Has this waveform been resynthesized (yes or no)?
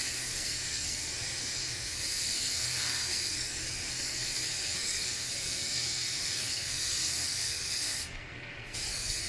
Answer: yes